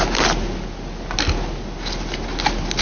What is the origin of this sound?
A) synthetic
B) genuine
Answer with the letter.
B